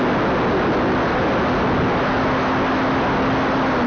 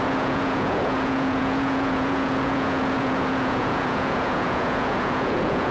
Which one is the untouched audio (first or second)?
first